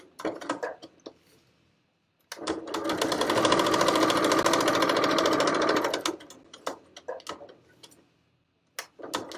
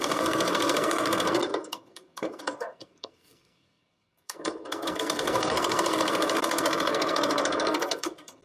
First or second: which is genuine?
first